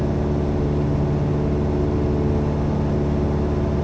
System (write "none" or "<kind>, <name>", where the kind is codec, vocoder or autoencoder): none